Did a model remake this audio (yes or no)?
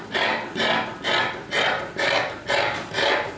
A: no